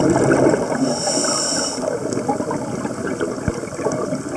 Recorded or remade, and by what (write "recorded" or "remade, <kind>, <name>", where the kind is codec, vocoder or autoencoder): recorded